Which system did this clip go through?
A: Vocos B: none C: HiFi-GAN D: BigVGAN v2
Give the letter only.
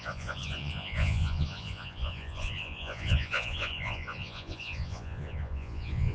A